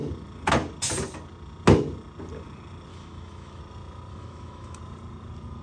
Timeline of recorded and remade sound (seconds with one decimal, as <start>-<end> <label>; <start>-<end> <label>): 0.0-2.9 recorded; 2.9-3.6 remade; 3.6-4.1 recorded; 4.1-4.8 remade; 4.8-5.6 recorded